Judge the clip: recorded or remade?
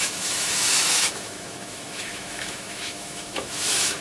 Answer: remade